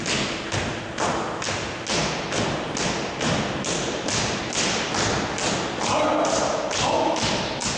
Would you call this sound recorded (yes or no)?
yes